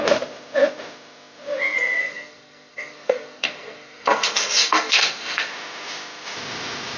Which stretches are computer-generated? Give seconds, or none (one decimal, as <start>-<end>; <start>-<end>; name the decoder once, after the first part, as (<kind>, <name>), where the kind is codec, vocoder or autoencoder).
2.0-5.5 (codec, SNAC)